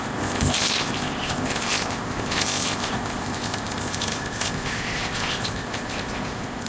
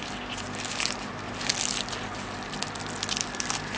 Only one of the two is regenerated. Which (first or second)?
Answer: first